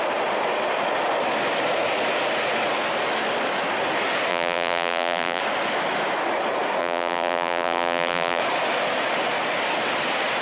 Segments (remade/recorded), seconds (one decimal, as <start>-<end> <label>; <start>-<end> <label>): 0.0-4.3 recorded; 4.3-5.4 remade; 5.4-6.8 recorded; 6.8-8.4 remade; 8.4-10.4 recorded